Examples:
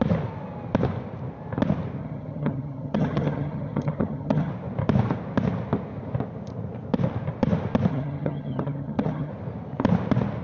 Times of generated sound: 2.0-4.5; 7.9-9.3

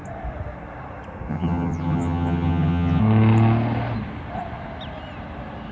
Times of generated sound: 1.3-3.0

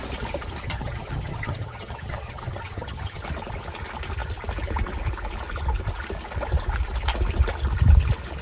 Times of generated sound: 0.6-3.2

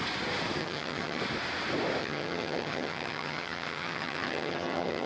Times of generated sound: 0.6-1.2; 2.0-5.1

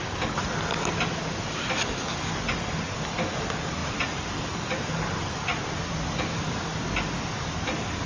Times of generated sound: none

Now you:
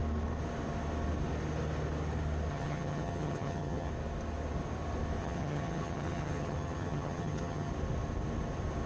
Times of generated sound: 2.5-3.9; 5.2-7.7